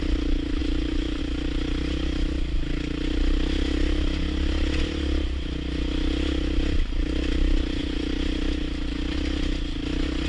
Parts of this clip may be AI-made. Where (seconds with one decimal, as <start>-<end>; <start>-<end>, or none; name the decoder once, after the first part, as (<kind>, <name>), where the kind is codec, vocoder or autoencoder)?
0.6-1.2 (vocoder, BigVGAN v2)